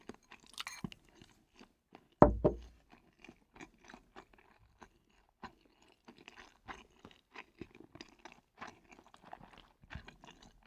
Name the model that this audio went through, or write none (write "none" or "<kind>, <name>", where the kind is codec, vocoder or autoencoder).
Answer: none